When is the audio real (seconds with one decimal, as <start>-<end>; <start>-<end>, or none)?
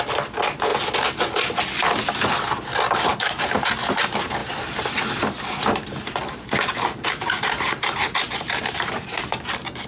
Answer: 0.0-3.1; 3.7-4.4; 9.4-9.9